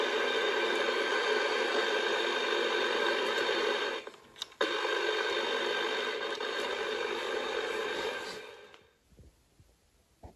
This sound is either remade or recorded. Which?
recorded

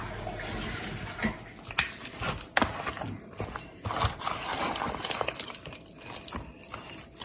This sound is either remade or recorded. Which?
recorded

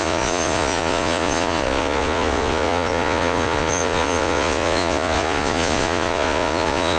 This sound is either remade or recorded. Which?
remade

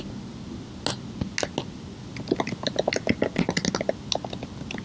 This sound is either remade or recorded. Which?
recorded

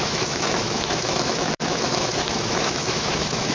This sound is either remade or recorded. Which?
remade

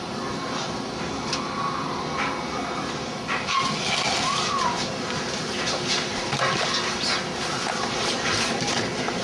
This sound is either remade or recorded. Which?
recorded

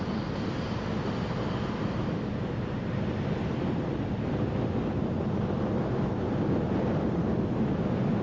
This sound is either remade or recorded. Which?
recorded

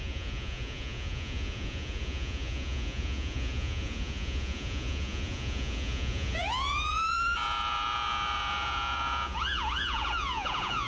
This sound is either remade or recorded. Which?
remade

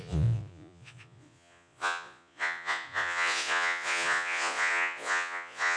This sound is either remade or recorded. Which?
remade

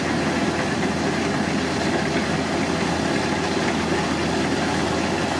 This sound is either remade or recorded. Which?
recorded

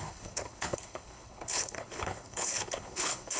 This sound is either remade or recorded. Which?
remade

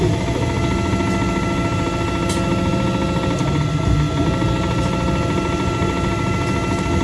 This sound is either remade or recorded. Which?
recorded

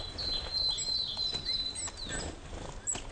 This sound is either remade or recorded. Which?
recorded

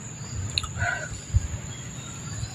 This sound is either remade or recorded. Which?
recorded